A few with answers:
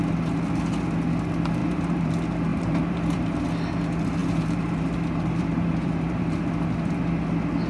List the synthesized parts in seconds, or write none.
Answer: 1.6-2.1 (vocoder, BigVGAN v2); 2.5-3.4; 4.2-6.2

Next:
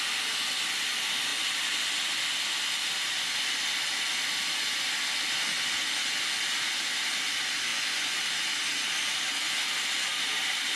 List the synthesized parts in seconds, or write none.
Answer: 7.7-8.2 (vocoder, Vocos)

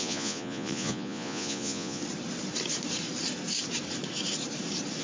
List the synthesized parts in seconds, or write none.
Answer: 0.0-2.0 (vocoder, Vocos)

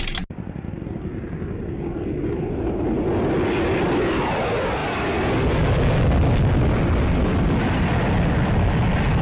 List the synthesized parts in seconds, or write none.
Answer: none

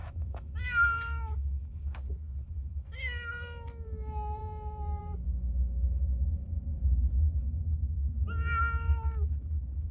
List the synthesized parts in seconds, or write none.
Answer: 0.0-0.6 (autoencoder, DAC-VAE)